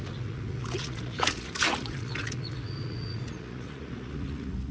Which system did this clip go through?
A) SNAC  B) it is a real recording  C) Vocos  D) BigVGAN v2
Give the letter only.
C